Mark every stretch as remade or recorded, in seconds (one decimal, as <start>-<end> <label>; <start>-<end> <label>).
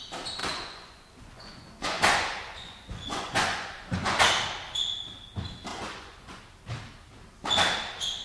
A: 0.0-0.4 recorded; 0.4-4.2 remade; 4.2-5.7 recorded; 5.7-6.4 remade; 6.4-8.2 recorded